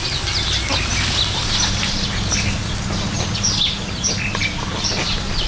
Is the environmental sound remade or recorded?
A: recorded